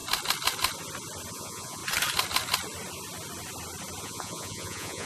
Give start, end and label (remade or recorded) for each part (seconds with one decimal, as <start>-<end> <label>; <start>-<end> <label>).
0.0-1.3 recorded; 1.3-1.8 remade; 1.8-4.0 recorded; 4.0-5.1 remade